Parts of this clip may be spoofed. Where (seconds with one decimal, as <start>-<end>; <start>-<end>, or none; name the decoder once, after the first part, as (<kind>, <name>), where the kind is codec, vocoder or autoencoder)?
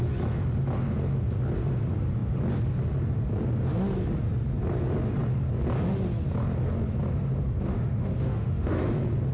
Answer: 7.7-8.9 (autoencoder, DAC-VAE)